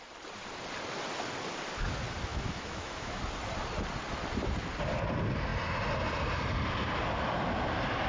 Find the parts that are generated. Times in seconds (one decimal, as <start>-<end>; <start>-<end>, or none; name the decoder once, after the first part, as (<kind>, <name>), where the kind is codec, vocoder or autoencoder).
2.3-3.2 (autoencoder, DAC-VAE)